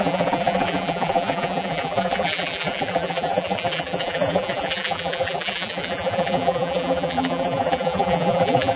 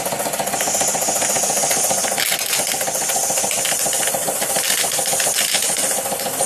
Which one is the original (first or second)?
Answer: second